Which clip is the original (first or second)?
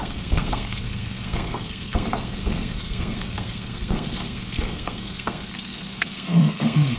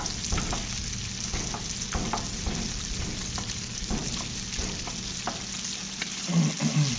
second